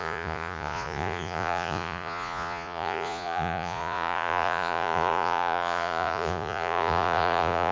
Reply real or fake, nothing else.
fake